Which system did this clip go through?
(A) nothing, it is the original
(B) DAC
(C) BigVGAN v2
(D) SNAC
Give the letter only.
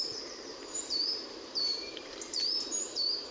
C